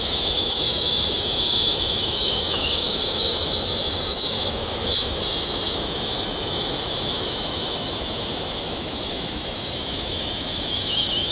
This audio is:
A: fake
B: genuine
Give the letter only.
A